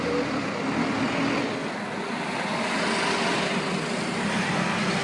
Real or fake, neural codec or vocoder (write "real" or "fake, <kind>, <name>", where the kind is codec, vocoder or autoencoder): real